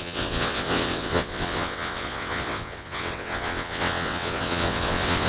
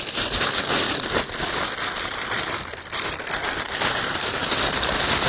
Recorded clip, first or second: second